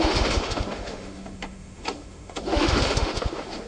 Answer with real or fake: fake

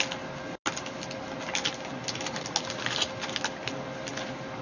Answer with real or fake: real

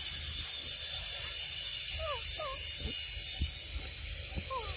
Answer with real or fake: real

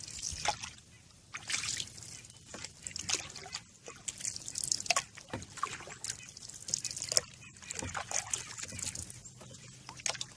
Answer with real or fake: real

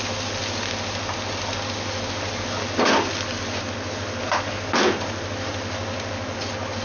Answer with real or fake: real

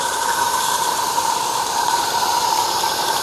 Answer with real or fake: fake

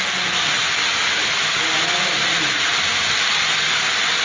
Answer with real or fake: real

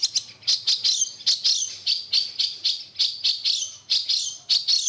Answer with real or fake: real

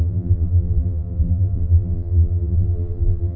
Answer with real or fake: fake